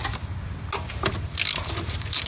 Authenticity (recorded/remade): recorded